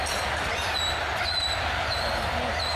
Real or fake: real